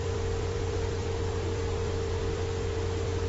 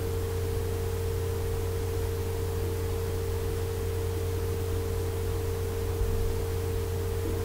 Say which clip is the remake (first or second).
first